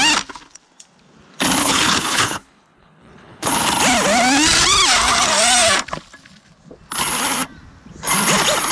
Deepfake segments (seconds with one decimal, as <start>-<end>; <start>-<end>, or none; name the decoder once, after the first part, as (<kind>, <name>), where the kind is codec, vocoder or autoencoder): 1.6-3.5 (codec, HILCodec)